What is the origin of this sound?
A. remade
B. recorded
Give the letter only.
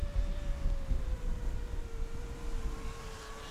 B